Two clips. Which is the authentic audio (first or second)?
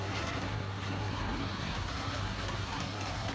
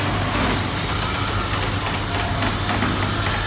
second